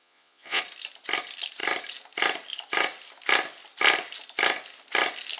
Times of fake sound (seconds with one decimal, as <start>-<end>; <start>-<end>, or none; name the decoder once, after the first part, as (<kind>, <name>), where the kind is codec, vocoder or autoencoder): 0.0-0.6 (vocoder, Vocos)